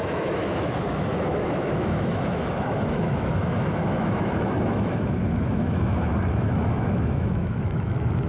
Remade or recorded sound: remade